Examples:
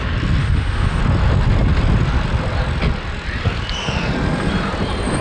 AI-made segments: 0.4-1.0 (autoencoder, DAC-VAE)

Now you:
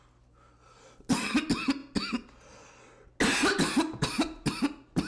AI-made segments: none

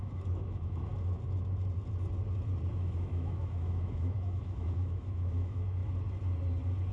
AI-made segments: 0.0-0.9 (autoencoder, DAC-VAE); 2.7-5.8

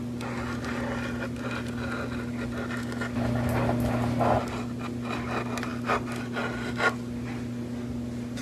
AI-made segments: none

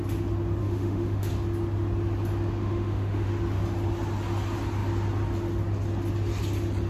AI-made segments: 0.6-1.3 (autoencoder, DAC-VAE); 2.6-3.3

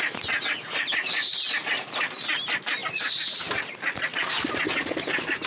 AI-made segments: none